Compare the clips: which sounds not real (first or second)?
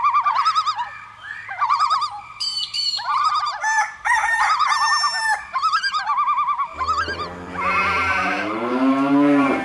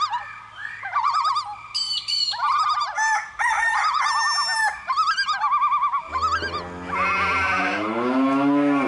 first